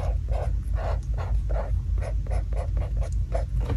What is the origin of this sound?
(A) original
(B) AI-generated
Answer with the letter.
A